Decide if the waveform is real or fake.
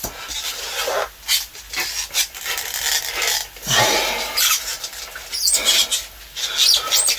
real